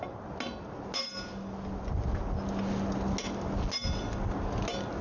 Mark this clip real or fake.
real